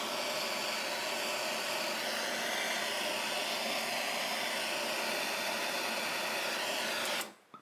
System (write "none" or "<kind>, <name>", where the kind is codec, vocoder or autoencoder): none